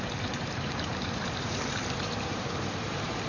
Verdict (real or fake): fake